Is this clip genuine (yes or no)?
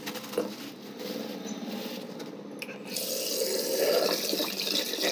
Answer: yes